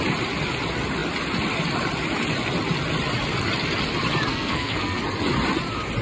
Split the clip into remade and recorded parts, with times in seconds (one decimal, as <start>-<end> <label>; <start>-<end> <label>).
0.0-4.3 recorded; 4.3-5.0 remade; 5.0-6.0 recorded